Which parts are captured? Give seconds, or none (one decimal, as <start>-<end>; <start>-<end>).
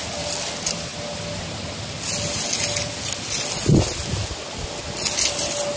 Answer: 0.0-5.8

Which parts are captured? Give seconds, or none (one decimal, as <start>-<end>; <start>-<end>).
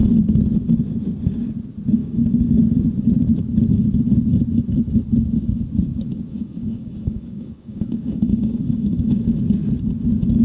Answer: 0.0-2.0; 2.6-6.3; 9.4-10.4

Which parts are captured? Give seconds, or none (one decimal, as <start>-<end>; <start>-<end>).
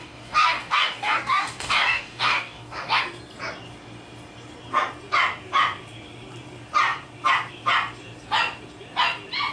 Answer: 3.0-9.5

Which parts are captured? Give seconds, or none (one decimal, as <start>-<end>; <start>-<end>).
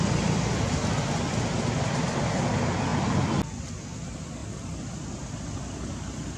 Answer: 0.0-6.4